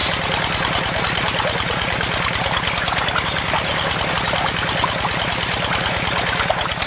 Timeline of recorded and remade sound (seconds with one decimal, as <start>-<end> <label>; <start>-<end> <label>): 0.0-6.9 recorded